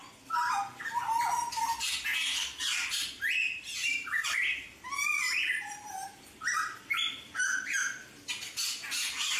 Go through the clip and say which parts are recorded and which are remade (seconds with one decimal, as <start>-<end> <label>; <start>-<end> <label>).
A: 0.0-3.4 recorded; 3.4-4.7 remade; 4.7-9.4 recorded